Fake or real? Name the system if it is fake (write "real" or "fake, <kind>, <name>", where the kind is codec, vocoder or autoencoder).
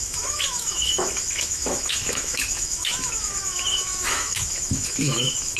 fake, autoencoder, DAC-VAE